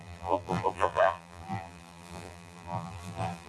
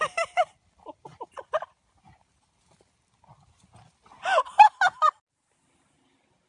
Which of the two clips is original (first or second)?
second